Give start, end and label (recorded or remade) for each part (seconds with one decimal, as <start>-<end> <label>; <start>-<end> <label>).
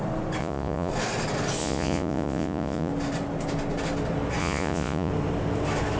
0.0-0.4 recorded; 0.4-0.9 remade; 0.9-1.6 recorded; 1.6-2.9 remade; 2.9-4.4 recorded; 4.4-5.1 remade; 5.1-6.0 recorded